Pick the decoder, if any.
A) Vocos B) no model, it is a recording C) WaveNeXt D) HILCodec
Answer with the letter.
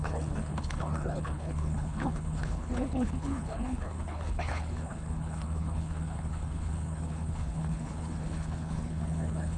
D